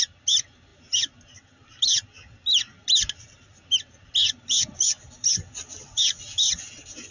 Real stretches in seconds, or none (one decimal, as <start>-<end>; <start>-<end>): 0.0-7.1